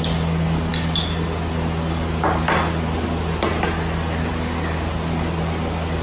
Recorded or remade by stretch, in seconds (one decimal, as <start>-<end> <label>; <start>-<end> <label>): 0.0-6.0 recorded